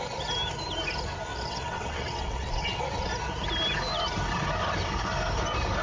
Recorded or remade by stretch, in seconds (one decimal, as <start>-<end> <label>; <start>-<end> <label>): 0.0-1.3 recorded; 1.3-3.1 remade; 3.1-5.8 recorded